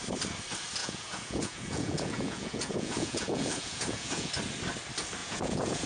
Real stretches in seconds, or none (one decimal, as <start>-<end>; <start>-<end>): 0.0-0.8; 4.3-5.2